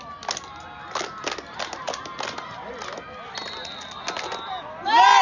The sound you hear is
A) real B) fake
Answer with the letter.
A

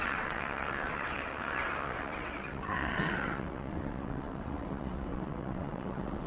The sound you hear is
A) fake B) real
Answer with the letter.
A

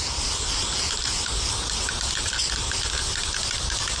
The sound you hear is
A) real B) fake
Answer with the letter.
A